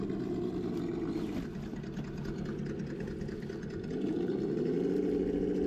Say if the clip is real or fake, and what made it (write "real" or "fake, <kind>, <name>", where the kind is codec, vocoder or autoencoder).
real